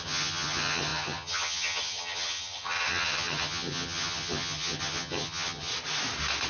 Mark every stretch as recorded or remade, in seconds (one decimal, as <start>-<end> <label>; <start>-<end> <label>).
0.0-5.7 remade; 5.7-6.5 recorded